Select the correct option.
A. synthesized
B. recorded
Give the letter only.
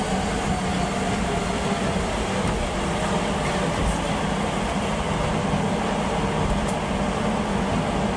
B